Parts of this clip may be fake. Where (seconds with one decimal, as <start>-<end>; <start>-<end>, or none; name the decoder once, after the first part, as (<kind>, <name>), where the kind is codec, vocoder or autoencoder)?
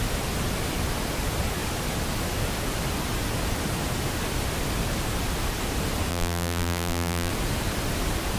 6.1-7.3 (vocoder, BigVGAN v2)